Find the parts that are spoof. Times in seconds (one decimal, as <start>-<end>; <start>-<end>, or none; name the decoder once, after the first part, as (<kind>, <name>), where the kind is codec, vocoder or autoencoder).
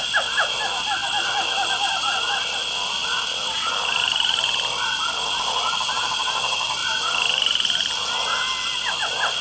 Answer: none